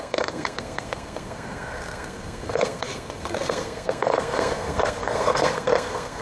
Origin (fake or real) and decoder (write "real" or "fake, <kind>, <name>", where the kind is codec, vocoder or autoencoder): fake, codec, SNAC